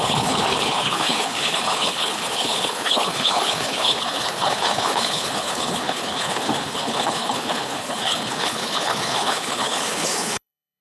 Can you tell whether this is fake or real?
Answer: fake